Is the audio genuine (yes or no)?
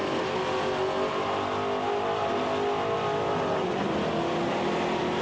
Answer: yes